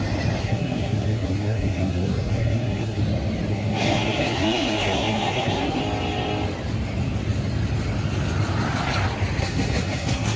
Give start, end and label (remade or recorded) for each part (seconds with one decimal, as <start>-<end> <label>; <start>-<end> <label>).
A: 0.0-0.4 recorded; 0.4-3.0 remade; 3.0-3.5 recorded; 3.5-5.8 remade; 5.8-9.4 recorded; 9.4-10.4 remade